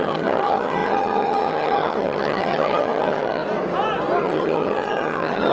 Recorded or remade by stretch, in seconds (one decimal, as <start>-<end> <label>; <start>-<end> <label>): 0.0-3.4 remade; 3.4-4.2 recorded; 4.2-5.5 remade